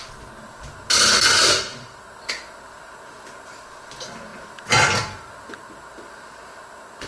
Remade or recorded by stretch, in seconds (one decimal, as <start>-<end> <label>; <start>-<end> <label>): 0.0-7.1 recorded